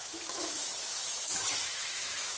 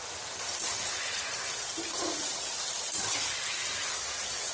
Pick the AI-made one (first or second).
first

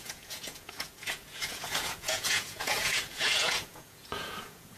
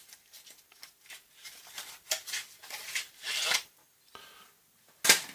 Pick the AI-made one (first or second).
first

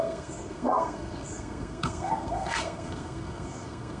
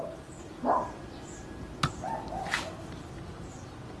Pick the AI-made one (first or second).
first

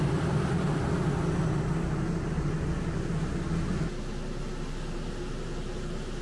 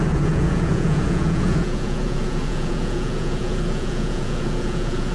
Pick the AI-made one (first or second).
second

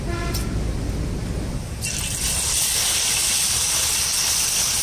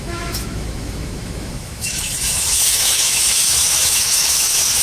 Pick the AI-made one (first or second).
second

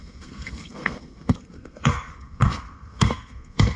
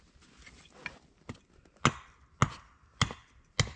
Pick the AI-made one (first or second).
first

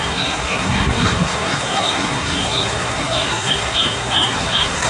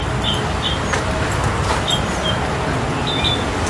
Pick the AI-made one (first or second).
first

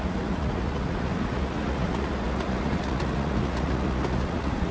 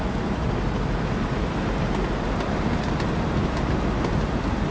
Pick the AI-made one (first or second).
first